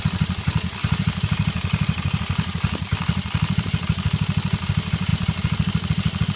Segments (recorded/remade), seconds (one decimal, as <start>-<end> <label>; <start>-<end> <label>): 0.0-0.8 recorded; 0.8-2.2 remade; 2.2-6.4 recorded

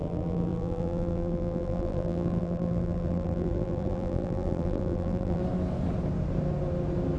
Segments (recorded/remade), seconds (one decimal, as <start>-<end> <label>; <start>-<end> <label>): 0.0-5.4 remade; 5.4-7.2 recorded